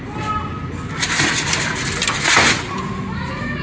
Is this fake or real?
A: real